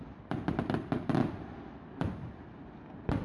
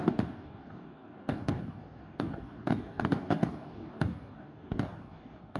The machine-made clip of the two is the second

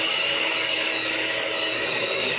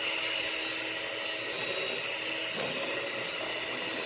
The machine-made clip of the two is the first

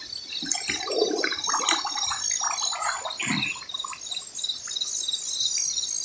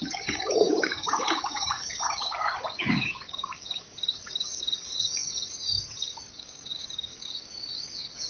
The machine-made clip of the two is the second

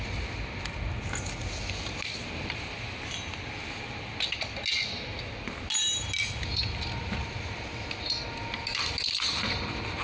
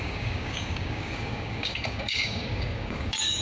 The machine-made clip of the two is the second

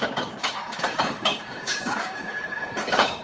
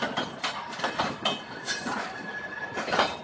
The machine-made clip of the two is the first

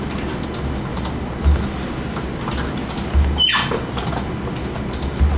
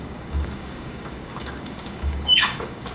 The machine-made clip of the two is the second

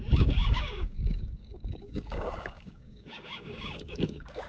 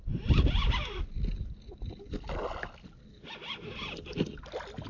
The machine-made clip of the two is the first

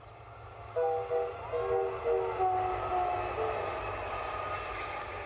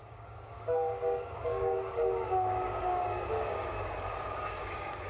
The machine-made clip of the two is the second